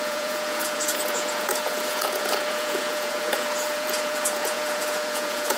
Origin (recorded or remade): remade